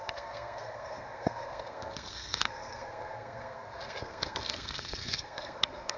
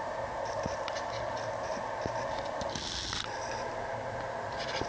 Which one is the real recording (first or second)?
second